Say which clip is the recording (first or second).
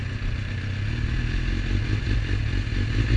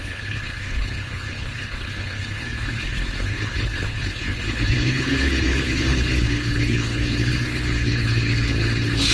first